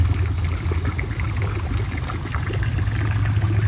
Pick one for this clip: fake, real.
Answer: real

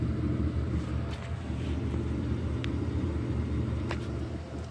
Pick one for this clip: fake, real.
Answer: real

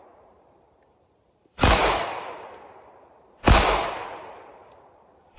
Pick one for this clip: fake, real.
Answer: fake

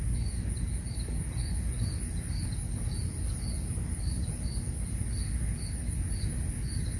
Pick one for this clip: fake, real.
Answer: real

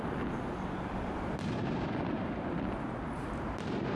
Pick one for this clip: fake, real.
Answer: real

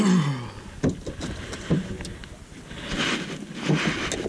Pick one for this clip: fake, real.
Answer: real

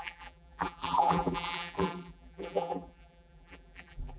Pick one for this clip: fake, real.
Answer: fake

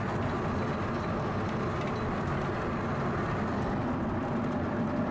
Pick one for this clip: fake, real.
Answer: real